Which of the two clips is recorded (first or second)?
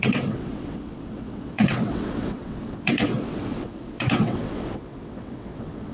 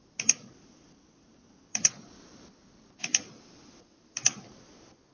second